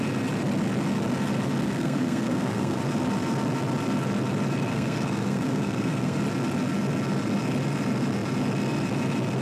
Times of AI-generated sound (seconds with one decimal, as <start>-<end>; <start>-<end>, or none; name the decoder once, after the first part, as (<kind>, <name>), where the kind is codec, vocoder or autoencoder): 1.6-2.8 (codec, SNAC); 4.7-6.2